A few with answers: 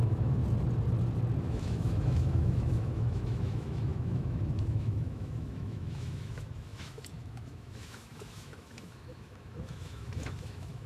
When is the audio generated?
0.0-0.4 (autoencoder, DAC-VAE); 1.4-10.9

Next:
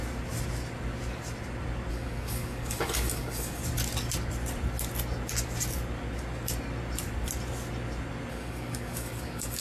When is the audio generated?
1.9-3.6 (codec, DAC); 8.3-9.6